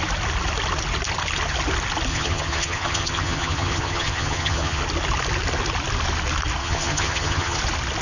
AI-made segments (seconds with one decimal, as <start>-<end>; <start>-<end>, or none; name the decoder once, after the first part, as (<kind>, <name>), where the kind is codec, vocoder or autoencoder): 2.1-4.8 (vocoder, HiFi-GAN); 6.6-7.6